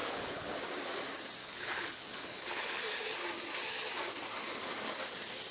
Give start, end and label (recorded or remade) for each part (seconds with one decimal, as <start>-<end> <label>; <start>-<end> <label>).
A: 0.0-0.6 remade; 0.6-1.4 recorded; 1.4-2.8 remade; 2.8-5.5 recorded